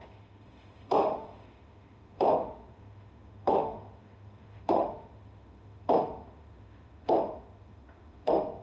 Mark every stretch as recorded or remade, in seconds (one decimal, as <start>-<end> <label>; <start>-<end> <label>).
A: 0.0-8.6 remade